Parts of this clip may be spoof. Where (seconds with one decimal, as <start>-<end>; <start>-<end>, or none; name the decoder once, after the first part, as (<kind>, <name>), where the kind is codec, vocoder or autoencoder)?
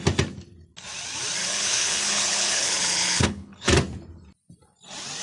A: 1.4-3.7 (codec, HILCodec)